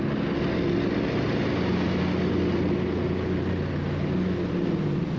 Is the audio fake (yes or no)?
no